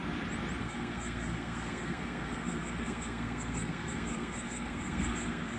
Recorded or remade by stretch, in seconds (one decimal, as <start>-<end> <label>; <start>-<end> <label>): 0.0-0.6 recorded; 0.6-5.6 remade